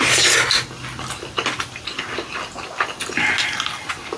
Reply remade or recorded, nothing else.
recorded